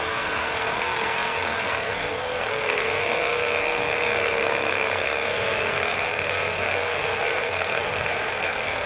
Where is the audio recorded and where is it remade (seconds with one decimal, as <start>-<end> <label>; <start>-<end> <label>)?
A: 0.0-8.9 remade